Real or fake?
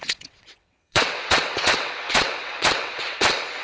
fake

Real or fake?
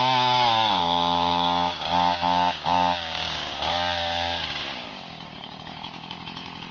fake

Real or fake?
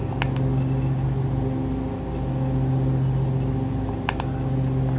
real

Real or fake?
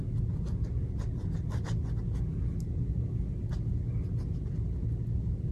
real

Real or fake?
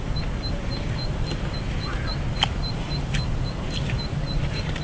real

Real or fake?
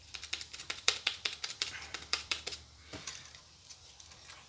fake